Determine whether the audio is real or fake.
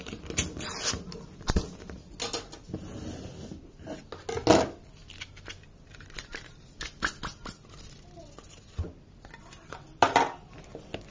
real